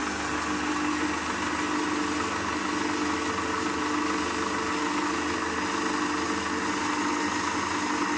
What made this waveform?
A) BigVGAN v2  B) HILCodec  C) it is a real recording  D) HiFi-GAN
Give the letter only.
C